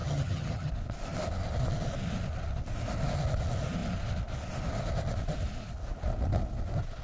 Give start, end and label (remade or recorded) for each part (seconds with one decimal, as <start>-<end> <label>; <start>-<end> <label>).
0.0-0.7 remade; 0.7-7.0 recorded